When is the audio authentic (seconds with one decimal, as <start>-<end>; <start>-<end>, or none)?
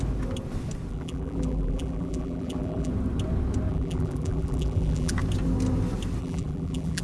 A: 0.0-0.9; 2.9-3.7; 5.1-6.2